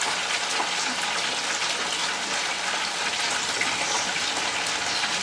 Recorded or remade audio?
recorded